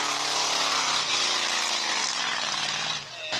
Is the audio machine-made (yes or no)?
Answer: no